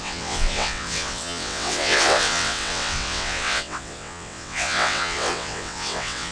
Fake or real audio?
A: fake